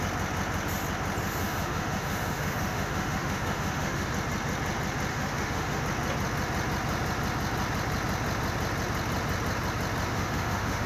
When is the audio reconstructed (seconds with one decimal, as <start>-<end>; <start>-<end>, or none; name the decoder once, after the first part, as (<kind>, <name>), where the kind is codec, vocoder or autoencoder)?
1.4-4.1 (autoencoder, DAC-VAE); 5.1-5.8; 10.1-10.9